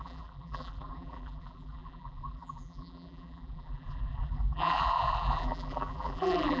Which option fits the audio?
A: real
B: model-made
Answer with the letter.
B